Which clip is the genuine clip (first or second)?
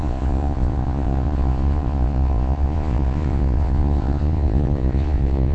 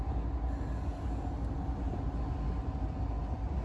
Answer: second